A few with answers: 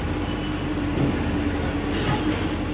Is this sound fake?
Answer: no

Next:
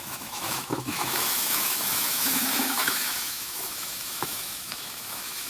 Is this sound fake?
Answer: yes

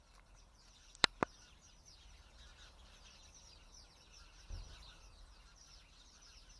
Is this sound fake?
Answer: no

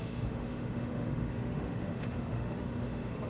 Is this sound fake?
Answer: yes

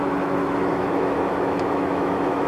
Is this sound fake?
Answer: yes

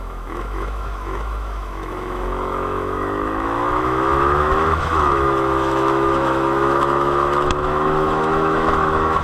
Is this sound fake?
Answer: yes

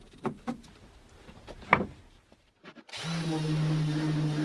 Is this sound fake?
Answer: no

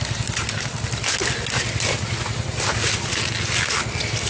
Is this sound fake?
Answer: no